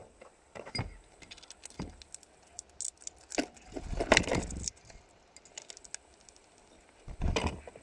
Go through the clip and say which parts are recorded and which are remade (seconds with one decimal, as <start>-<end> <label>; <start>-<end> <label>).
0.0-1.4 remade; 1.4-7.8 recorded